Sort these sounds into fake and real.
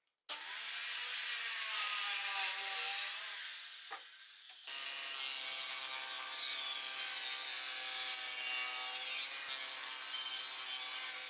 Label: real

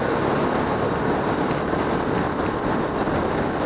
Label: real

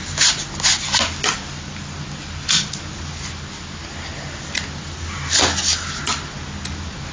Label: real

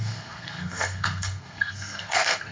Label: fake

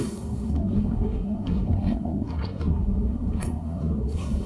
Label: fake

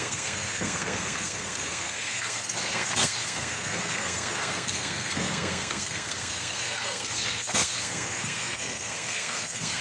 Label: fake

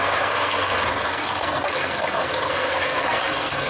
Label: fake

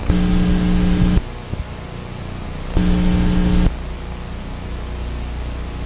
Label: real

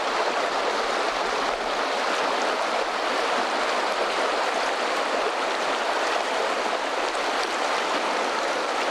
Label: real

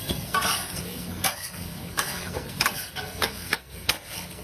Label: fake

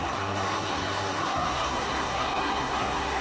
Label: fake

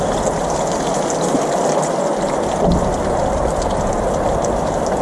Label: real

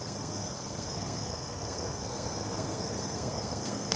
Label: fake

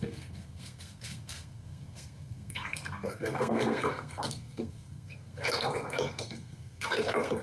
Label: fake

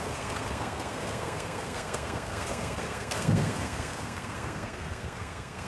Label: fake